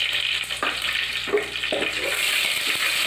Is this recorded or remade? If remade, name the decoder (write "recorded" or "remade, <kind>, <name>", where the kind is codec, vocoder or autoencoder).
recorded